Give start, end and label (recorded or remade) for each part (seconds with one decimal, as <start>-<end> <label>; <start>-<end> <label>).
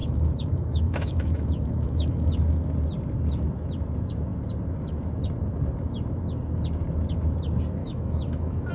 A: 0.0-2.3 remade; 2.3-7.8 recorded; 7.8-8.7 remade